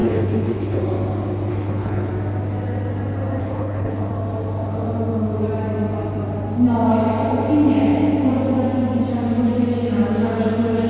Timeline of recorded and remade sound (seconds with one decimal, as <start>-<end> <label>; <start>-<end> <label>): 0.0-0.8 remade; 0.8-1.5 recorded; 1.5-2.1 remade; 2.1-3.4 recorded; 3.4-4.1 remade; 4.1-10.9 recorded